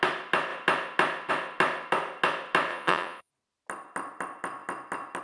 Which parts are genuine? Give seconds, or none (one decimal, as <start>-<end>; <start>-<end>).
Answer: 0.0-2.7; 3.3-5.2